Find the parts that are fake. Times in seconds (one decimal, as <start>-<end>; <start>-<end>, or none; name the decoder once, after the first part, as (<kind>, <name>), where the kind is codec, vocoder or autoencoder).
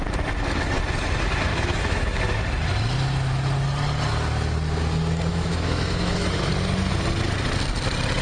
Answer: 1.5-2.2 (autoencoder, DAC-VAE); 5.3-6.5